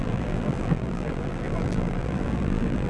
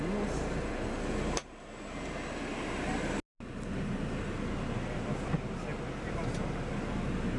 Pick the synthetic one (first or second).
first